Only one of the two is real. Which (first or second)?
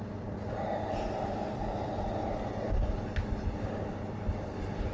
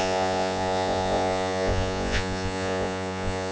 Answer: first